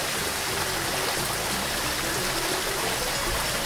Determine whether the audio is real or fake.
real